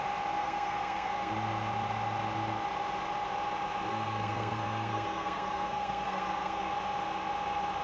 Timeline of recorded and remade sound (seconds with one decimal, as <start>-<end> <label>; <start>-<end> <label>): 0.0-0.4 recorded; 0.4-1.3 remade; 1.3-3.9 recorded; 3.9-6.7 remade; 6.7-7.8 recorded